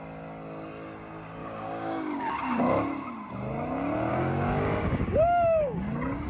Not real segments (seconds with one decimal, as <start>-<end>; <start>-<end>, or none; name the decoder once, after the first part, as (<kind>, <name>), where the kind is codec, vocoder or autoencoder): 1.4-2.6 (codec, DAC); 4.1-5.8